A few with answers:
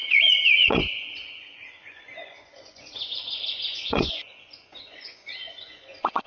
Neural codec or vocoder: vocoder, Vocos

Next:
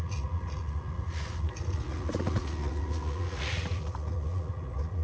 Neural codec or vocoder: vocoder, Vocos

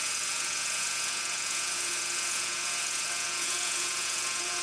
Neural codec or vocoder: vocoder, Vocos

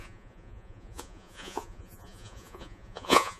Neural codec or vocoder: vocoder, Vocos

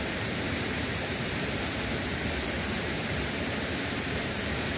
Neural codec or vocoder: vocoder, BigVGAN v2